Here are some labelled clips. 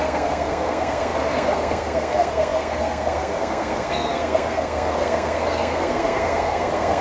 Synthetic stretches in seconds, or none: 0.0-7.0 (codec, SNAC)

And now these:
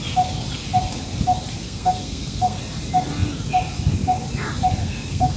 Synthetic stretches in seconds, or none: 1.6-2.6 (codec, SNAC); 4.8-5.4

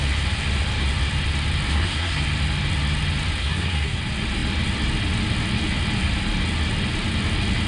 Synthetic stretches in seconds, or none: 1.7-2.2 (codec, SNAC); 3.4-4.0

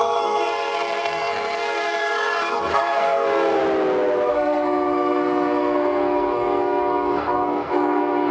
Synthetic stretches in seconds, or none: 0.0-3.6 (codec, SNAC); 4.3-8.3

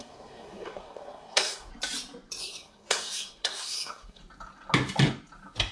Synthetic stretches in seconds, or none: 0.0-1.7 (codec, SNAC); 2.4-4.2

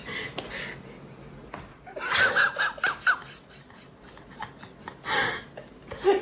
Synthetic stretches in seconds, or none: none

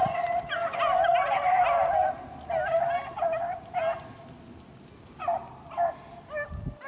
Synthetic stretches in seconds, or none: none

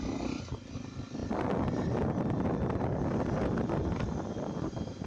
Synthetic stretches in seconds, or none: none